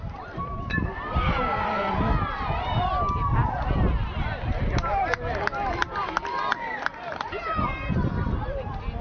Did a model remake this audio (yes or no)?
yes